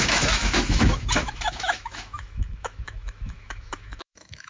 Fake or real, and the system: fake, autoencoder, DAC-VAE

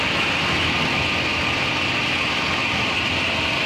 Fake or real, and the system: real